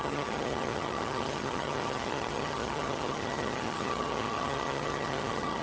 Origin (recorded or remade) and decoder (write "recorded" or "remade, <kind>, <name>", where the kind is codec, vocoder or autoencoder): remade, vocoder, HiFi-GAN